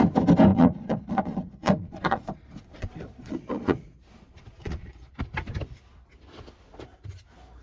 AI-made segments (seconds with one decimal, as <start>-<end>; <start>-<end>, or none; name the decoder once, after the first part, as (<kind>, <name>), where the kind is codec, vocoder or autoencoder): 0.5-5.1 (vocoder, Vocos)

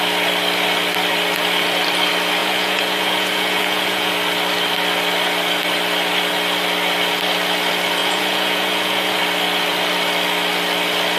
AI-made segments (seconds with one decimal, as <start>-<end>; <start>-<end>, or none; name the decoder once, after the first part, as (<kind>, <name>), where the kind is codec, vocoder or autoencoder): 2.4-4.1 (vocoder, Vocos); 8.0-9.2

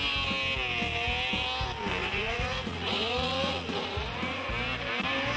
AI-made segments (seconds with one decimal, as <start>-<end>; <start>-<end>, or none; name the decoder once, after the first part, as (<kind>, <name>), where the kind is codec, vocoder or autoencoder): 2.0-4.5 (vocoder, Vocos)

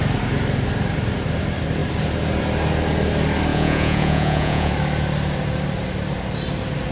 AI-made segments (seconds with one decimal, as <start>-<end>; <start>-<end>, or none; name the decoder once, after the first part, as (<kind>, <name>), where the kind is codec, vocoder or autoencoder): 3.5-4.7 (vocoder, Vocos)

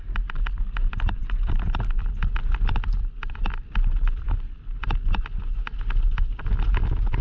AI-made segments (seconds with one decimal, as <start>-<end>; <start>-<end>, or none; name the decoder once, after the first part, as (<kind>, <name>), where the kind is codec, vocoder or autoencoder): none